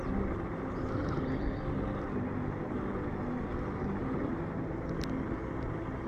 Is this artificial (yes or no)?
no